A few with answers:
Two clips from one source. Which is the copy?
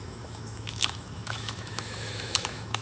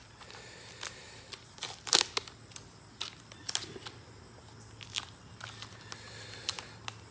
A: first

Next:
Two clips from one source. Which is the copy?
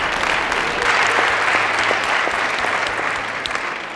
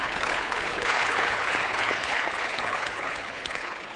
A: second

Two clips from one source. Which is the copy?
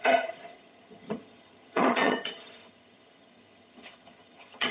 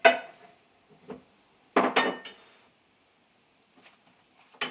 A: first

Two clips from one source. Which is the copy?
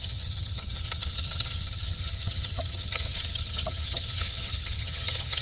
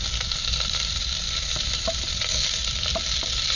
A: first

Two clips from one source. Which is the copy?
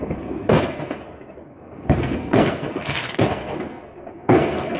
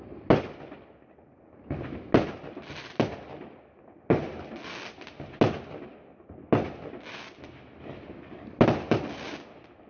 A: first